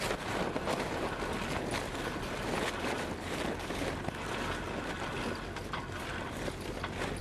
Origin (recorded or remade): recorded